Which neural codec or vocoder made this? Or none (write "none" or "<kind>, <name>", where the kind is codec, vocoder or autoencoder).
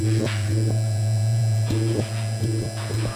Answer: vocoder, Vocos